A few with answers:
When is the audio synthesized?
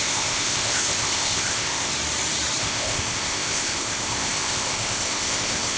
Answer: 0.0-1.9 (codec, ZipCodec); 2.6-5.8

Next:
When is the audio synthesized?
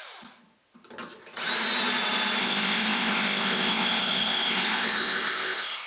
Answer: 2.4-5.9 (codec, ZipCodec)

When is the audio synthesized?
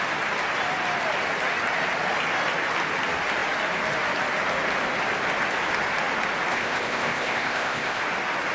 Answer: 6.5-8.0 (codec, ZipCodec)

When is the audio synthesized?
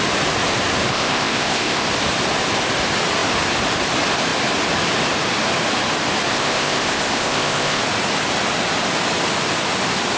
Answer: 0.9-1.9 (codec, ZipCodec); 6.3-7.8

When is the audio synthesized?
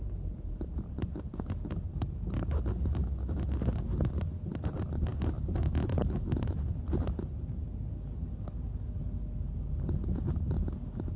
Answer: none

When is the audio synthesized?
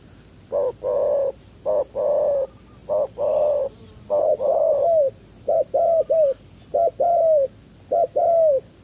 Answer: none